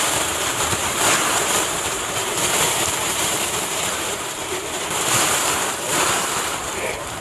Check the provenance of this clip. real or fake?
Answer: fake